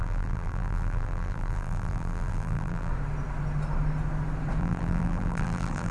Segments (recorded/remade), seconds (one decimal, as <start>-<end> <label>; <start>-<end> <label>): 0.0-2.9 remade; 2.9-4.6 recorded; 4.6-5.9 remade